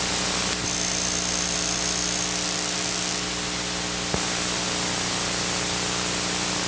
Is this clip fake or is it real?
real